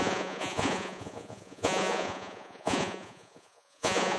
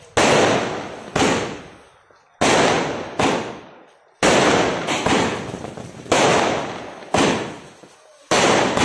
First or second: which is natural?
second